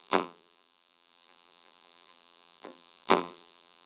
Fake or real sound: fake